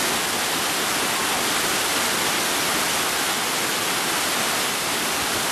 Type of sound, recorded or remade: recorded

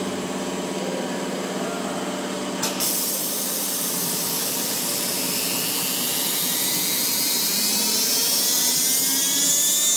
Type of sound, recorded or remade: recorded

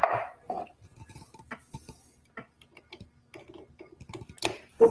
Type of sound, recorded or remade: recorded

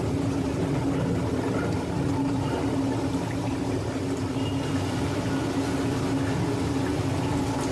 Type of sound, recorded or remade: recorded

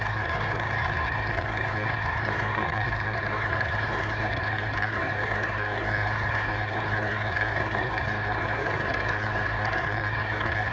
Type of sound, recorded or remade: remade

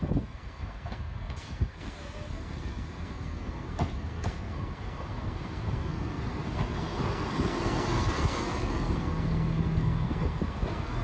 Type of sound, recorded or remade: remade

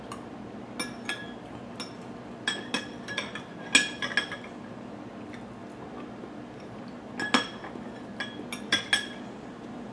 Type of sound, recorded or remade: recorded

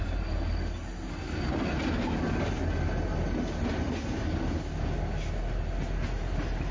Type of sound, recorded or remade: recorded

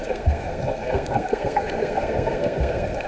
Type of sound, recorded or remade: remade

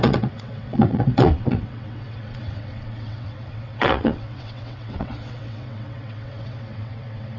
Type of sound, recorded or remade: remade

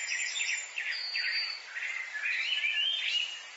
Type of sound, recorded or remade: recorded